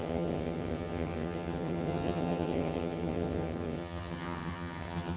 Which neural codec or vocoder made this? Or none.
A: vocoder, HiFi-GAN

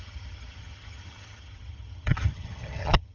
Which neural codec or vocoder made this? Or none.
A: vocoder, HiFi-GAN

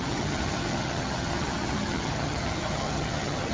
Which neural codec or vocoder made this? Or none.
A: vocoder, HiFi-GAN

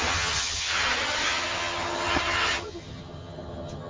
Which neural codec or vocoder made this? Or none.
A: vocoder, HiFi-GAN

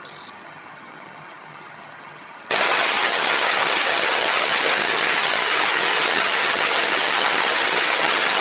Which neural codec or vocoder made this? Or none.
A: vocoder, HiFi-GAN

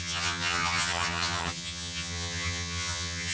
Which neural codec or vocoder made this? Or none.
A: vocoder, HiFi-GAN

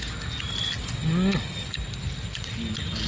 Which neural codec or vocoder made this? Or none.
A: none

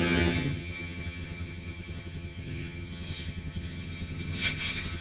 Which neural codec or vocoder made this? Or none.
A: vocoder, HiFi-GAN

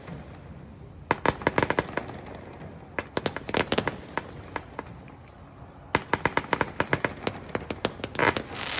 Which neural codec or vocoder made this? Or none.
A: none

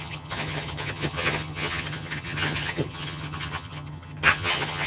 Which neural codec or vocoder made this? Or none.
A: vocoder, HiFi-GAN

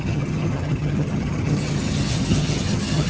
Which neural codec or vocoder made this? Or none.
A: vocoder, HiFi-GAN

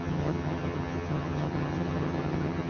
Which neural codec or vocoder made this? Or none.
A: vocoder, HiFi-GAN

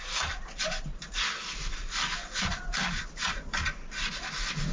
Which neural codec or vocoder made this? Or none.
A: none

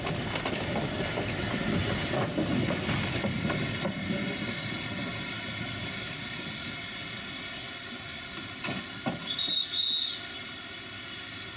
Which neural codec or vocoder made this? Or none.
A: none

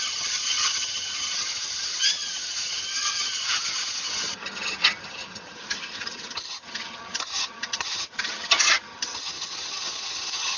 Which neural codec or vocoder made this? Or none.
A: vocoder, HiFi-GAN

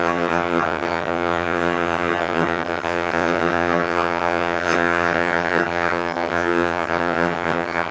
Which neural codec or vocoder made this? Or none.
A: vocoder, HiFi-GAN